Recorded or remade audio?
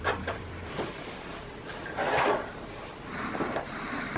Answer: remade